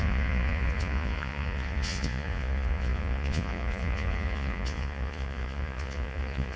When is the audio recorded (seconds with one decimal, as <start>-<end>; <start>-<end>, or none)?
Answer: none